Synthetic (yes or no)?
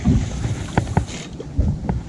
no